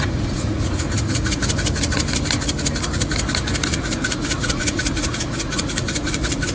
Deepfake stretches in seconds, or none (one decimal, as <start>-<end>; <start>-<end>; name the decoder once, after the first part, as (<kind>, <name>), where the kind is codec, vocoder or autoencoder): 0.0-1.4 (vocoder, Vocos); 3.7-6.5